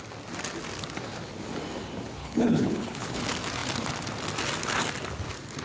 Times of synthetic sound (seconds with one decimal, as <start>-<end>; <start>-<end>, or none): 2.2-3.2